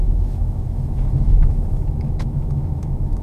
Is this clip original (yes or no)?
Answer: no